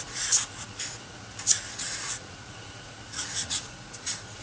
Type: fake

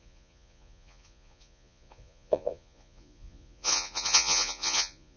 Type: fake